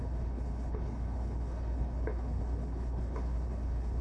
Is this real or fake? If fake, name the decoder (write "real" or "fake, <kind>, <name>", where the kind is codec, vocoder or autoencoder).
fake, codec, HILCodec